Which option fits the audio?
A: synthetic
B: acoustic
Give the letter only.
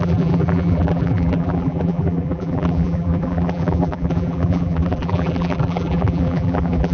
A